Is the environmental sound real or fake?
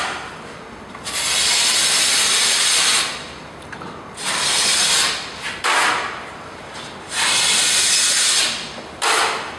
real